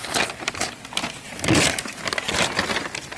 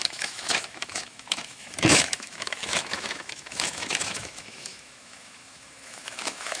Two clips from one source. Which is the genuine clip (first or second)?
first